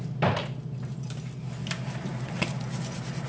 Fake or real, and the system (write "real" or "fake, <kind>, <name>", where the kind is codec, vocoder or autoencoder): real